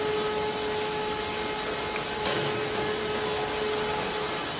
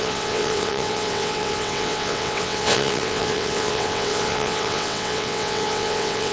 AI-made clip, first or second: second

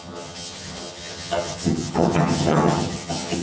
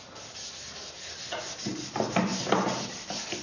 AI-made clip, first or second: first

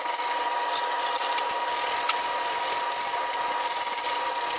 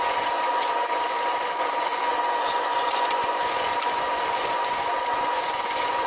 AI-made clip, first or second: second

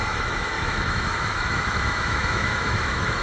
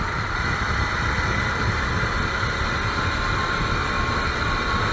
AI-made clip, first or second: first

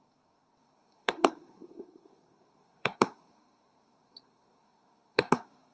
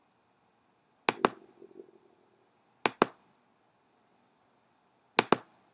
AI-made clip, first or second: first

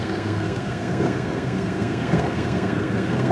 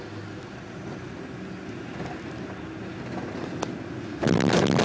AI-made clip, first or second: first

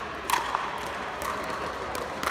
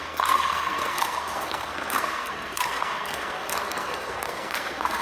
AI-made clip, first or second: second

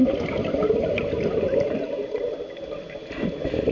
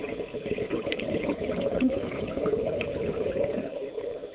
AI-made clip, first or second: second